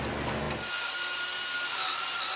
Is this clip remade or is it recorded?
recorded